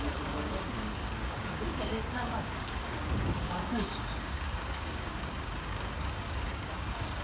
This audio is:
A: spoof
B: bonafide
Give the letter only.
A